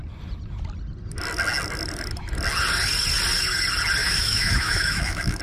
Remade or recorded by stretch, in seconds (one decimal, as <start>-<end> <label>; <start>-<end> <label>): 0.0-4.0 recorded; 4.0-5.4 remade